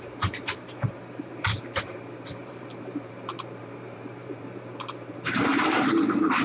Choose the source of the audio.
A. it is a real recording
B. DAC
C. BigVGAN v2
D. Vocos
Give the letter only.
C